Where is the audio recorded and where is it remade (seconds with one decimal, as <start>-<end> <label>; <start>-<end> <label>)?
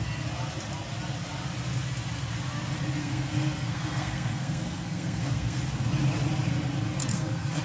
0.0-3.0 recorded; 3.0-5.6 remade; 5.6-7.0 recorded; 7.0-7.6 remade